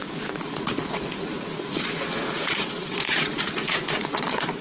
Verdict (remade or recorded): remade